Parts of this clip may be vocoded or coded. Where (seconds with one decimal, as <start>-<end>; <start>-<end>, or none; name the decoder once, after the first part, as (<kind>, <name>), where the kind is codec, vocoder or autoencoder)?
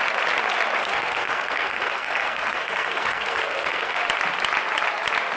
0.8-4.0 (codec, SNAC)